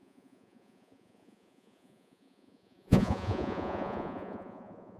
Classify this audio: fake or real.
fake